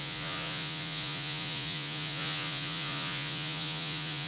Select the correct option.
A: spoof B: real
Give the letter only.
A